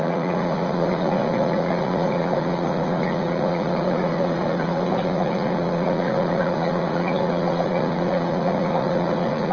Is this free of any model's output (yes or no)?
no